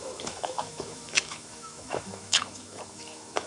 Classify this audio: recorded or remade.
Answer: remade